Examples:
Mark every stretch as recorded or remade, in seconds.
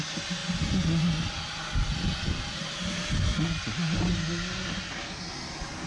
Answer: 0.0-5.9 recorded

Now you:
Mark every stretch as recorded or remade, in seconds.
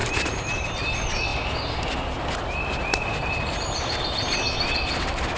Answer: 0.0-0.7 remade; 0.7-5.4 recorded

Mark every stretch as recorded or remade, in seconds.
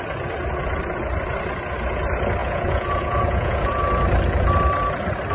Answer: 0.0-2.4 recorded; 2.4-3.8 remade; 3.8-5.3 recorded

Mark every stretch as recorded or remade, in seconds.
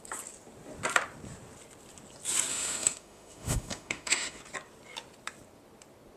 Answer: 0.0-2.5 recorded; 2.5-4.4 remade; 4.4-6.2 recorded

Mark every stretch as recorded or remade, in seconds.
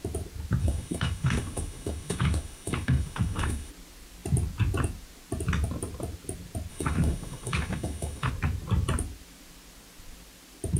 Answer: 0.0-0.6 recorded; 0.6-3.7 remade; 3.7-6.7 recorded; 6.7-8.3 remade; 8.3-10.8 recorded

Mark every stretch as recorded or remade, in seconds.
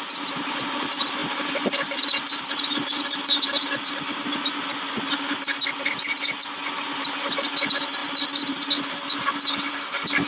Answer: 0.0-10.3 recorded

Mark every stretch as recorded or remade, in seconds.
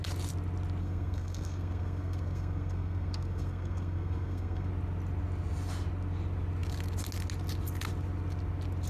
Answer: 0.0-0.8 recorded; 0.8-4.7 remade; 4.7-8.9 recorded